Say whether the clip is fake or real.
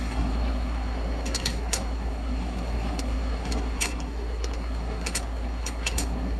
fake